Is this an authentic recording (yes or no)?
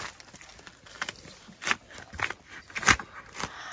yes